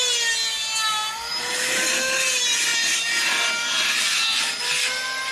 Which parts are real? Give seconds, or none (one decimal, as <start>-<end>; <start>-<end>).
0.0-2.7; 4.6-5.3